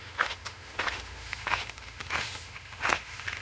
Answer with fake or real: fake